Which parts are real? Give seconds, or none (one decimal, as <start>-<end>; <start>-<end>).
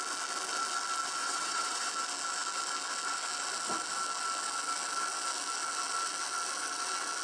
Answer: 0.0-1.2; 1.9-7.2